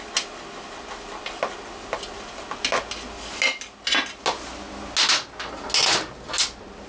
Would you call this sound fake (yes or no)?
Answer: no